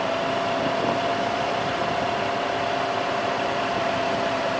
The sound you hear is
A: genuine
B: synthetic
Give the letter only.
A